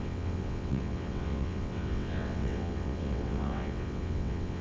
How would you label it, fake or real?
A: fake